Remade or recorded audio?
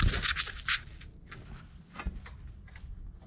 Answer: recorded